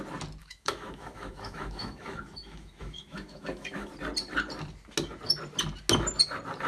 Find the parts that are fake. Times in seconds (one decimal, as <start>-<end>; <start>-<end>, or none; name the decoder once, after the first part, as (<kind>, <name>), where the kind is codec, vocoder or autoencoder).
0.4-3.9 (autoencoder, DAC-VAE)